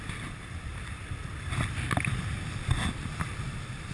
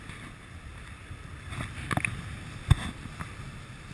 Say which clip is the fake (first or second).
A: first